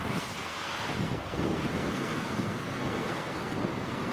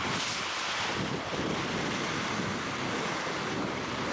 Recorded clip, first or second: second